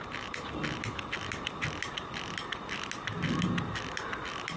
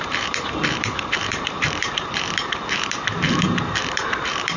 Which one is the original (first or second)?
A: first